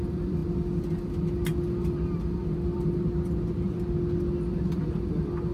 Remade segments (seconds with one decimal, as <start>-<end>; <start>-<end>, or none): none